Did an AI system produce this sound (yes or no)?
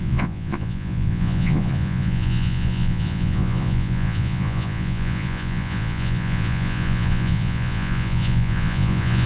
yes